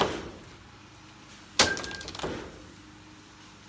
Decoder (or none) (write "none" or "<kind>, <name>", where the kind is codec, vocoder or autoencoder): none